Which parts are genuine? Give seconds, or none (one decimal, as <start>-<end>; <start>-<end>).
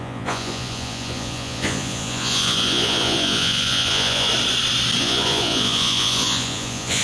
4.3-5.0